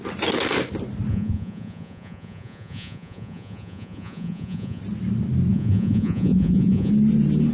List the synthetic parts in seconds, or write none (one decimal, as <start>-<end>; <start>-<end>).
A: 1.1-4.8; 5.5-6.9